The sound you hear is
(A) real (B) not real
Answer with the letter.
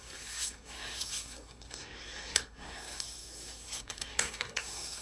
B